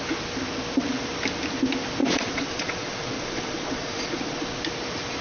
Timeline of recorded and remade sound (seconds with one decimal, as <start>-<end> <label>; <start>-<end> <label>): 0.0-2.0 recorded; 2.0-4.6 remade; 4.6-5.2 recorded